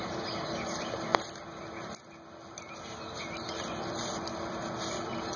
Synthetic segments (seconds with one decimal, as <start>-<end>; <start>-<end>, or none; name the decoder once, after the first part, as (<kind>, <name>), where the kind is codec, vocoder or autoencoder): none